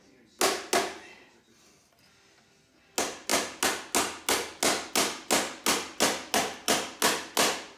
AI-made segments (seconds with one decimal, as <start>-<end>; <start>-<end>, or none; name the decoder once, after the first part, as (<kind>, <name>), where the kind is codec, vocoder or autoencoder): none